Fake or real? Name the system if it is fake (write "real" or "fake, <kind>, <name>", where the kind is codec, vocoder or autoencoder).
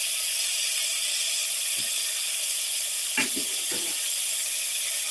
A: real